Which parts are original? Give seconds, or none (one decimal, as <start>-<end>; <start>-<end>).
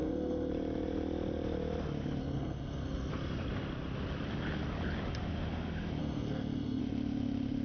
0.5-2.2; 3.1-6.0; 6.8-7.6